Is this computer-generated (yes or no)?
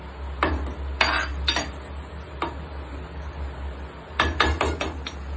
no